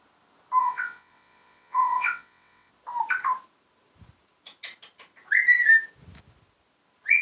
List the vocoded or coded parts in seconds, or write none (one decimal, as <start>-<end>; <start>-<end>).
0.6-2.7

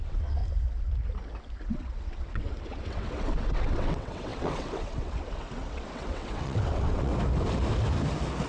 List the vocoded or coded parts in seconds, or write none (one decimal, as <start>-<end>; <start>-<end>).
0.0-0.4; 1.6-7.1

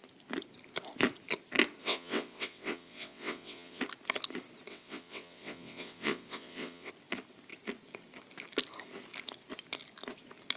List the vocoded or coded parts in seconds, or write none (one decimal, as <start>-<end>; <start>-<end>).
1.8-3.8; 4.7-6.9

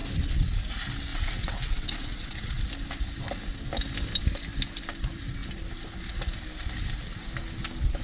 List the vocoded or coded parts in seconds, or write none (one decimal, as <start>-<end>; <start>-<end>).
1.1-2.6